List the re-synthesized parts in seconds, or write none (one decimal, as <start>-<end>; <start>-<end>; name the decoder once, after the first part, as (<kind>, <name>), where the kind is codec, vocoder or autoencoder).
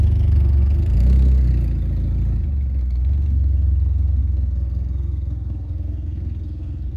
0.0-1.5 (codec, SNAC); 2.8-7.0